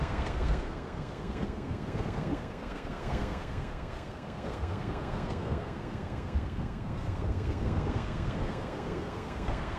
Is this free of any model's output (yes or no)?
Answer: no